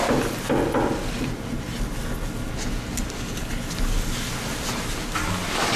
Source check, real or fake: real